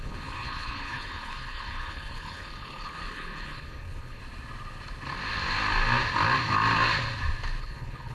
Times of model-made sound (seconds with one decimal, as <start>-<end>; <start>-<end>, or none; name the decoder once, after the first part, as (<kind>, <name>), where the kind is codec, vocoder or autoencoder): 0.0-4.2 (codec, HILCodec); 7.6-8.1